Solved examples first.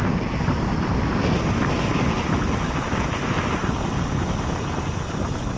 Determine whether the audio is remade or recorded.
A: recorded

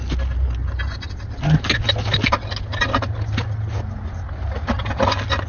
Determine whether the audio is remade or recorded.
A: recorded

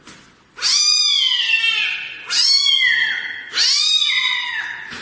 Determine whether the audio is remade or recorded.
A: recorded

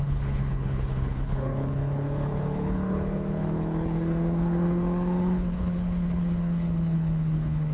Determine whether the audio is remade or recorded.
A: remade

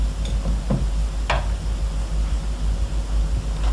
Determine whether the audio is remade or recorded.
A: recorded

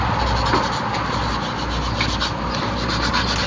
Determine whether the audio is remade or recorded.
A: recorded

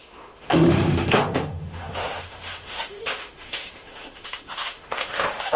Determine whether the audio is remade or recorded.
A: remade